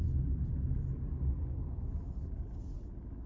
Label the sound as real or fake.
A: real